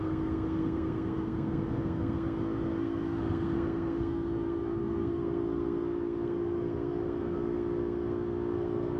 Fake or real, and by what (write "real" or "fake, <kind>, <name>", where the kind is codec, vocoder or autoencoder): fake, codec, SNAC